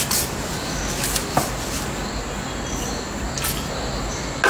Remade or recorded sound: recorded